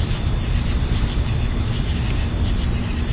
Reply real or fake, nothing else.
fake